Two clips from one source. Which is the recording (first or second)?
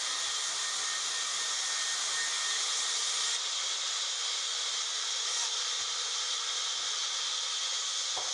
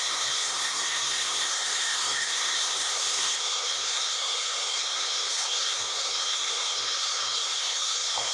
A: first